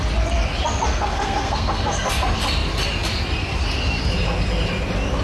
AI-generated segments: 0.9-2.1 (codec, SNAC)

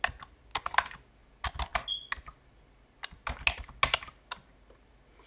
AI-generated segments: none

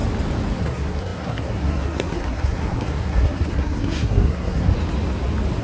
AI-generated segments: 0.5-4.7 (codec, SNAC)

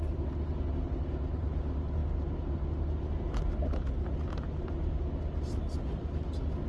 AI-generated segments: none

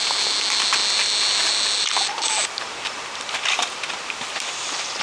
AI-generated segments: none

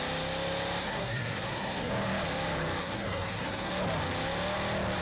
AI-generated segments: 0.8-1.9 (codec, SNAC); 2.8-3.7